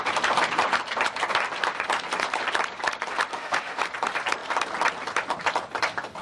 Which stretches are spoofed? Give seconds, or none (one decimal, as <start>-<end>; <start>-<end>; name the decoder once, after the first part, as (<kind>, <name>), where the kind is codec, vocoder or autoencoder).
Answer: 3.3-3.8 (autoencoder, DAC-VAE)